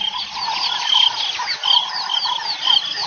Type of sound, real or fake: real